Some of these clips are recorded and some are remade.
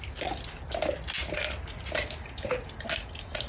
recorded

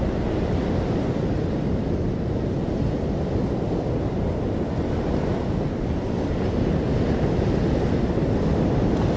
recorded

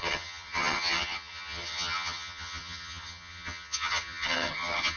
remade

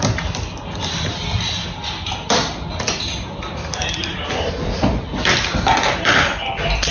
recorded